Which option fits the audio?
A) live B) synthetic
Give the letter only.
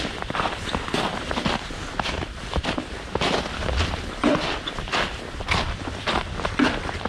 B